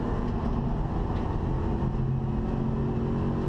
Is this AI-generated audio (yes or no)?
no